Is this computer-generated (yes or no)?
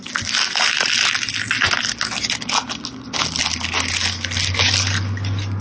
no